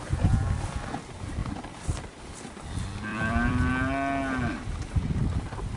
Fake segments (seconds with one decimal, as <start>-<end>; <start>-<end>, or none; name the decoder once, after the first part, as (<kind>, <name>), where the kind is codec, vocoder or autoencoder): 1.4-2.2 (vocoder, BigVGAN v2); 3.1-3.7